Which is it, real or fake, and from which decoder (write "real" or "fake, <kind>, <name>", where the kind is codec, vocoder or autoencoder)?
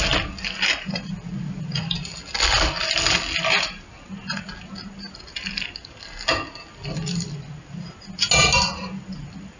real